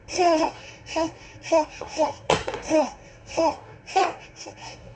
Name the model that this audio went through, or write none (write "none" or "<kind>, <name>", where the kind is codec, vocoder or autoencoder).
codec, SNAC